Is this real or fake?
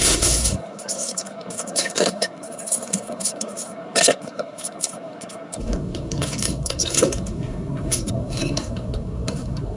fake